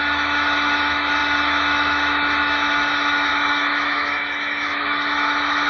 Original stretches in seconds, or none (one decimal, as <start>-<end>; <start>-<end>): none